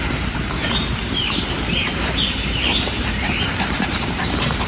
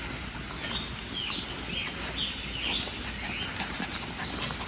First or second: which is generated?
first